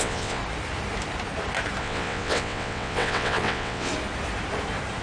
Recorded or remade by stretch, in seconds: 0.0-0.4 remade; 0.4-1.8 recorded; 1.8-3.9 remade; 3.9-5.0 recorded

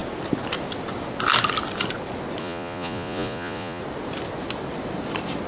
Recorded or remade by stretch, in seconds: 0.0-2.4 recorded; 2.4-3.8 remade; 3.8-5.5 recorded

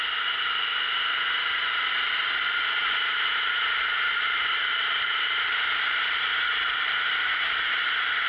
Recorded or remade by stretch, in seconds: 0.0-2.8 recorded; 2.8-7.1 remade; 7.1-8.3 recorded

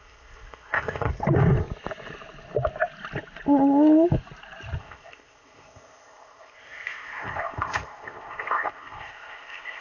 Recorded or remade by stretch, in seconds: 0.0-1.1 remade; 1.1-4.8 recorded; 4.8-9.8 remade

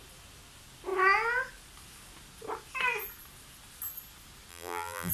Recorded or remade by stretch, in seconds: 0.0-4.5 recorded; 4.5-5.1 remade

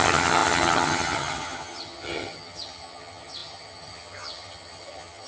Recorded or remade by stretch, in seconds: 0.0-5.3 remade

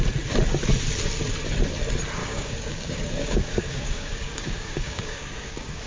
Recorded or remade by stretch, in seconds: 0.0-2.2 recorded; 2.2-5.9 remade

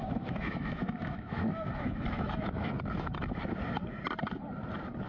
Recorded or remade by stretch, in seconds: 0.0-2.7 remade; 2.7-5.1 recorded